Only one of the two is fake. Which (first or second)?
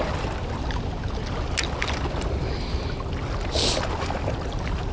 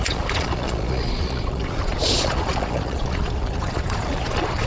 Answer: second